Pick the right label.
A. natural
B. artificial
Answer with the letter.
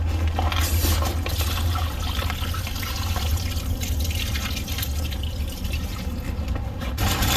A